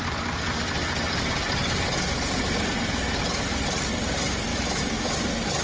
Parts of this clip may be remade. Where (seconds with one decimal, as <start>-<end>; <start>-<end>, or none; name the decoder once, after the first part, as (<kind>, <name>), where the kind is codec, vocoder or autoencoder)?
4.5-5.1 (autoencoder, DAC-VAE)